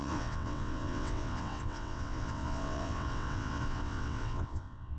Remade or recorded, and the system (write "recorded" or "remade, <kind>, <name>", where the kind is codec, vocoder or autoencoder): remade, vocoder, WaveNeXt